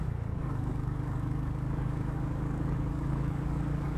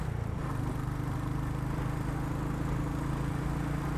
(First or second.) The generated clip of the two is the first